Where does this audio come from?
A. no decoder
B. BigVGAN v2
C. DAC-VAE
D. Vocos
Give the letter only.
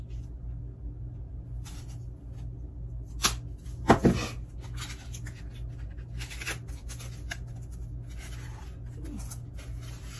A